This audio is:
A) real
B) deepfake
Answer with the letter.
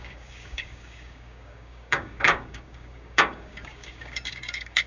B